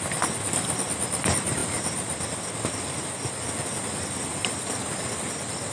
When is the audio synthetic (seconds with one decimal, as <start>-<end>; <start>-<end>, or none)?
none